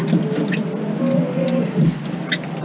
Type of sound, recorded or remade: recorded